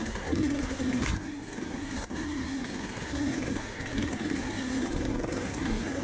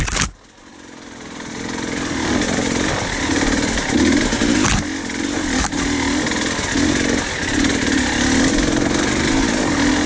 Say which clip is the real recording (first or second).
second